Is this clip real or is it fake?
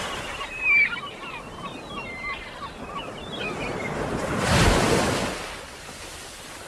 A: real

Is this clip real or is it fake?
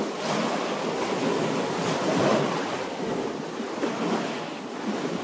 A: real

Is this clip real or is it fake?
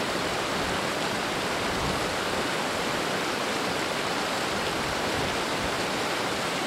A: fake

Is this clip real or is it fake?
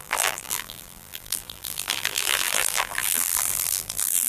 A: fake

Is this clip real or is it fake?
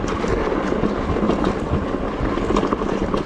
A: real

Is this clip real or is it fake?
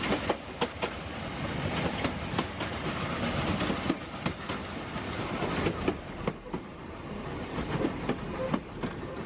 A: real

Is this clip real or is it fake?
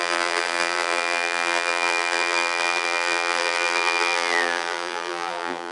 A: fake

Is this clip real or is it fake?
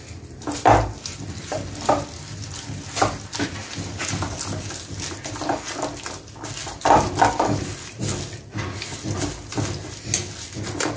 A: real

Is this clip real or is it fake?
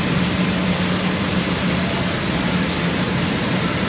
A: real